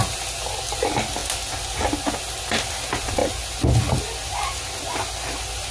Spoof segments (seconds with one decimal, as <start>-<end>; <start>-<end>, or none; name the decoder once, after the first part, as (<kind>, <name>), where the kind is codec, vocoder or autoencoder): none